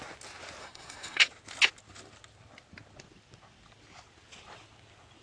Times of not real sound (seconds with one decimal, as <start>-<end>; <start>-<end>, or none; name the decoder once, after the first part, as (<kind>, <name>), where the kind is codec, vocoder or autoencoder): 0.6-1.3 (codec, SNAC)